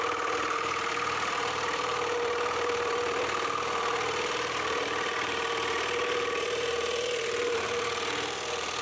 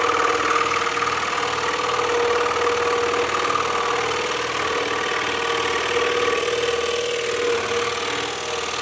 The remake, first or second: first